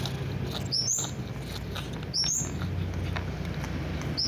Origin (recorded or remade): recorded